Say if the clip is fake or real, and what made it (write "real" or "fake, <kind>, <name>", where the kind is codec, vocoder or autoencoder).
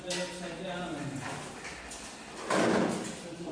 real